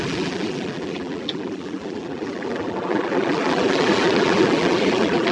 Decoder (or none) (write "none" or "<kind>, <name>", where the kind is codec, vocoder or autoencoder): vocoder, BigVGAN v2